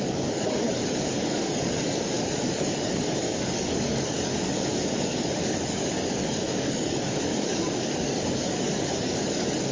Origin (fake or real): fake